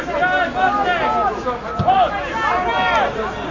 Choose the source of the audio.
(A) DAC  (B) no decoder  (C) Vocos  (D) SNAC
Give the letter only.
B